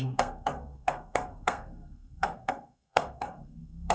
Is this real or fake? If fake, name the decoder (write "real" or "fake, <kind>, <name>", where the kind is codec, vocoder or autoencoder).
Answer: fake, codec, SNAC